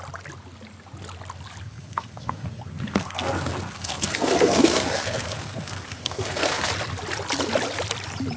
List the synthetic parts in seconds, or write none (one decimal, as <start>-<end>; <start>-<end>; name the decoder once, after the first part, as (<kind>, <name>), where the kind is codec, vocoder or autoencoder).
1.7-6.7 (codec, SNAC)